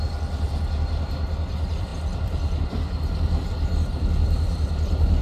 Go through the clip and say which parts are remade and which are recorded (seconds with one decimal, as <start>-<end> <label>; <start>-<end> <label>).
0.0-5.2 remade